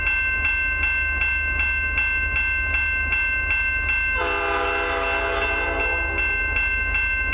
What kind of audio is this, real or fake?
real